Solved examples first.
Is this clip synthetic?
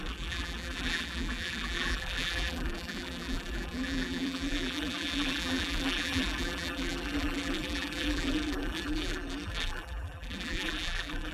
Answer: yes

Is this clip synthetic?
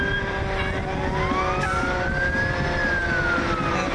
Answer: no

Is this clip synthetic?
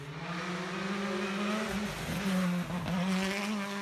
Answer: no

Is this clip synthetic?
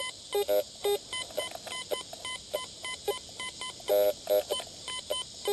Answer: no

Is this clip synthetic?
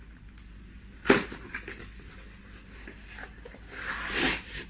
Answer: no